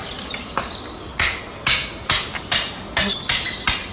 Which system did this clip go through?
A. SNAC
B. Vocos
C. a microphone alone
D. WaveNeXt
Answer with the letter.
C